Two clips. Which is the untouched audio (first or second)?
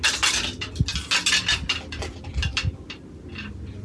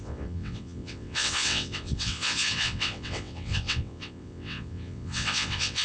first